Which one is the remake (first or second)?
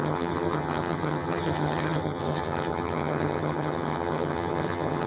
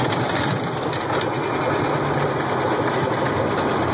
first